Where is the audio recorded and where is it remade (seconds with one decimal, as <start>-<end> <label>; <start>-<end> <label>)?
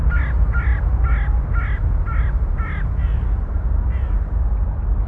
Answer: 0.0-5.1 recorded